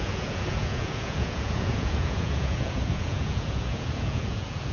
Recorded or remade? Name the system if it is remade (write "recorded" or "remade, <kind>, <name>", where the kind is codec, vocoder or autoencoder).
remade, vocoder, Vocos